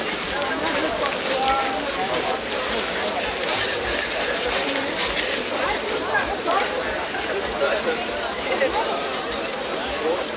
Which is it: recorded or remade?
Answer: recorded